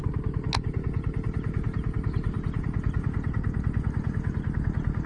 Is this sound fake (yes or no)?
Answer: no